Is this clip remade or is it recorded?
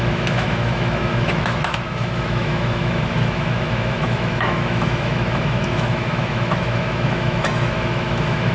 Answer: remade